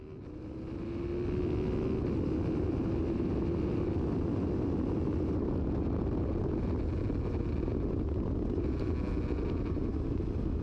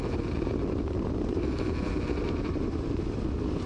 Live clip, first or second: first